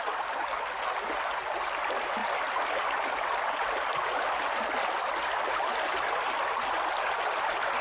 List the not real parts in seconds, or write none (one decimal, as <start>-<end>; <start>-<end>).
none

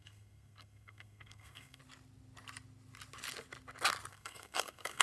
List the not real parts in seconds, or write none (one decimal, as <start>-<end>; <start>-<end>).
0.0-1.8; 4.1-5.0

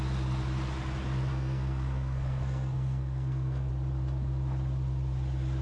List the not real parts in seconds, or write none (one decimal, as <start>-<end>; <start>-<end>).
1.3-3.7

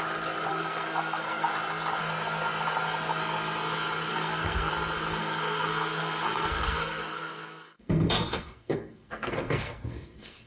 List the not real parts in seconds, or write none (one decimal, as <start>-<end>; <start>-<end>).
0.5-1.5; 4.1-4.7; 5.2-10.5

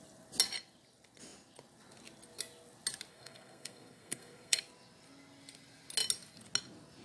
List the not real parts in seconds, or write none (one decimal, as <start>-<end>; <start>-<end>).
3.1-4.6

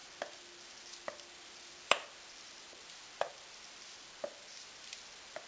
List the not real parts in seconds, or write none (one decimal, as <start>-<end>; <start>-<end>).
none